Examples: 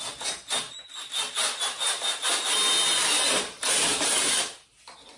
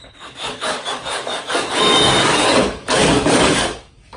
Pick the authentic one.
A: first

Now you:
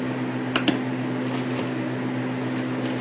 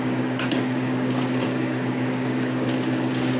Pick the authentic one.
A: first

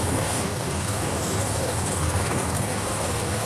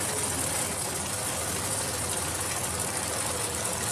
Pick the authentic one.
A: second